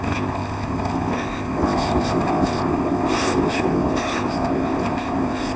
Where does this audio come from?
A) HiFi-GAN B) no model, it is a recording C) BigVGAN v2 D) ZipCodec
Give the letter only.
D